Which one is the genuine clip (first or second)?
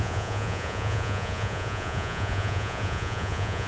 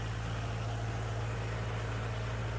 second